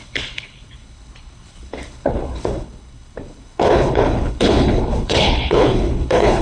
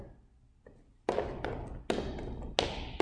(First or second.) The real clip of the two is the second